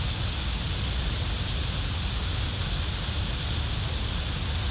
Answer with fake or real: real